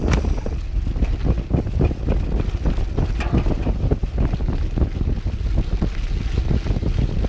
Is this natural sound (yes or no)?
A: yes